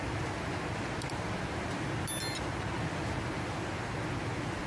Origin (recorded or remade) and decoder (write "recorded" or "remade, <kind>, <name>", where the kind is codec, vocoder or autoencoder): recorded